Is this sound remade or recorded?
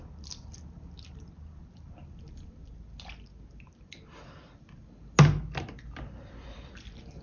recorded